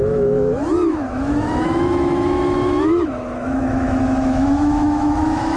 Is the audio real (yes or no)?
no